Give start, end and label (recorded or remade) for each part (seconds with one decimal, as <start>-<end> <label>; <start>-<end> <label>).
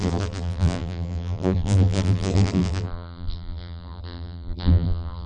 0.0-5.3 remade